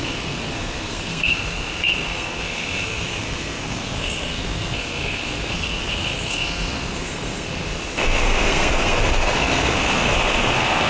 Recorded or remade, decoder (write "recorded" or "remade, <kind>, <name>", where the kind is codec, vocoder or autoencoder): remade, codec, SNAC